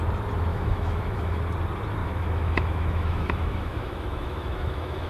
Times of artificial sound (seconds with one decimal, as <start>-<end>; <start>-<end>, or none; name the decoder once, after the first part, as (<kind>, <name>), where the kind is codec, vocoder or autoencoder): 0.5-1.4 (autoencoder, DAC-VAE); 2.0-5.1